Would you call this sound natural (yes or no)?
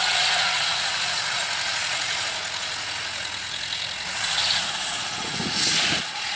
no